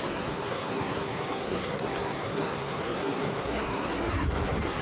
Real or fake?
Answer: fake